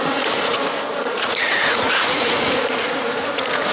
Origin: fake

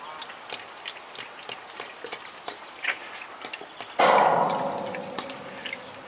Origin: real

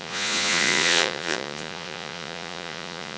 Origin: fake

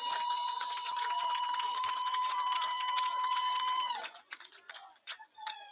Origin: fake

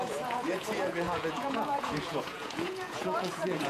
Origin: fake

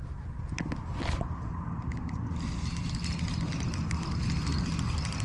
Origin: real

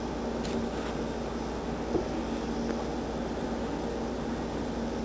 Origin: real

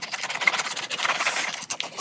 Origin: real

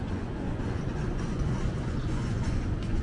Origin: fake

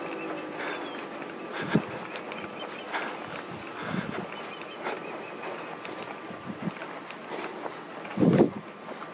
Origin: real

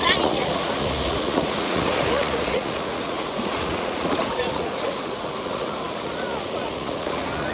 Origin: fake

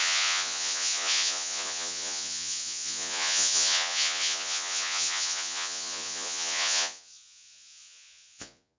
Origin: fake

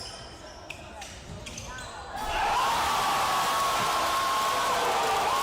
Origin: real